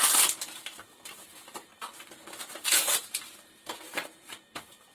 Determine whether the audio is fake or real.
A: fake